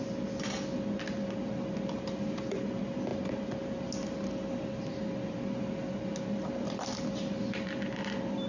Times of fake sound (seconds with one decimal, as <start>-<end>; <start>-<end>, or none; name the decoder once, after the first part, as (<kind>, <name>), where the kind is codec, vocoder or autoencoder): none